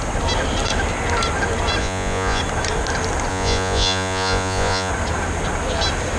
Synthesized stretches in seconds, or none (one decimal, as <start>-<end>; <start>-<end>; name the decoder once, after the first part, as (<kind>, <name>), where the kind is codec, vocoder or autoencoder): 1.8-2.4 (vocoder, Vocos); 3.3-4.9